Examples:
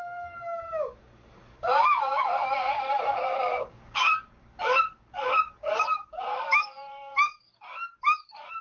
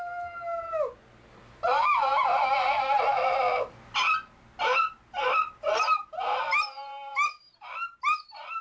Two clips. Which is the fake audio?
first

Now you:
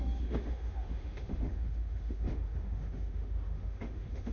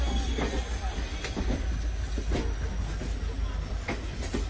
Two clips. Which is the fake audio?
first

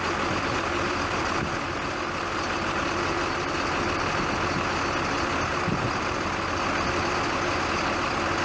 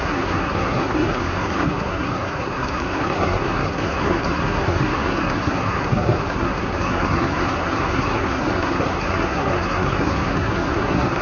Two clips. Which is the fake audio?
second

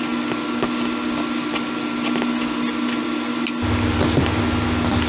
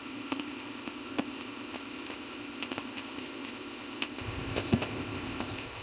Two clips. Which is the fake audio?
second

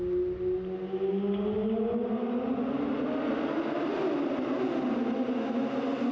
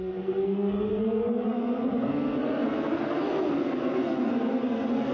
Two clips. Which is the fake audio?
second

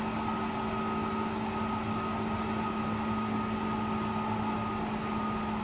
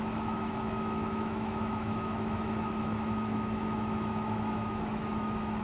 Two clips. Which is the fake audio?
second